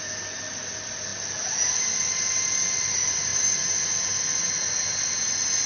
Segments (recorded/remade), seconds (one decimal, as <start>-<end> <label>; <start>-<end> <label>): 0.0-5.7 recorded